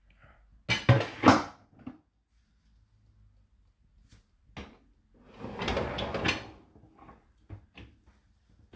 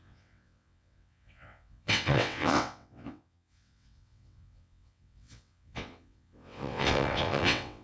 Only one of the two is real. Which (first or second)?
first